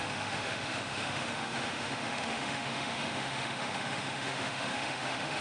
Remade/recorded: remade